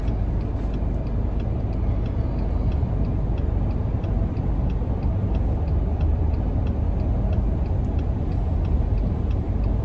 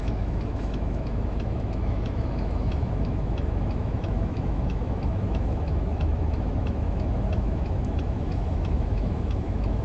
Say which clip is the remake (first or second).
second